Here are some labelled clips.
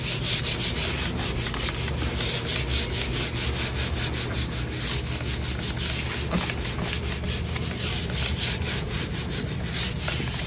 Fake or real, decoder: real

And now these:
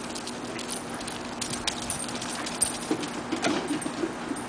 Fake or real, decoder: real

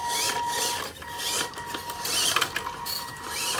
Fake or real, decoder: real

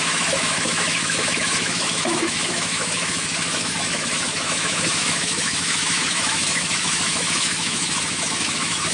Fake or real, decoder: fake, autoencoder, DAC-VAE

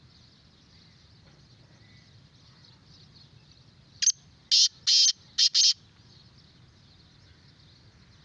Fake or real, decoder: real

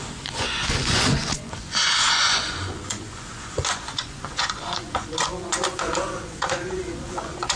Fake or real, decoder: fake, vocoder, Vocos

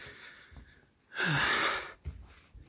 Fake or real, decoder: real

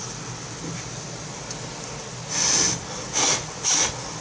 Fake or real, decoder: real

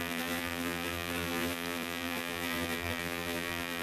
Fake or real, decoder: fake, vocoder, BigVGAN v2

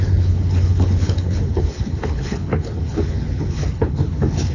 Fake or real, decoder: fake, codec, HILCodec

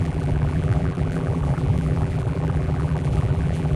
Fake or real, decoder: fake, vocoder, BigVGAN v2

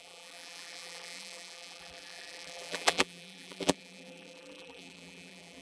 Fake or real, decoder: fake, vocoder, BigVGAN v2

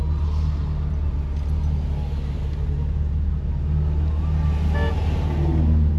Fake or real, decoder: real